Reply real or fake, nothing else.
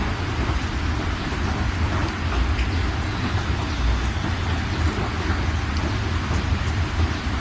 real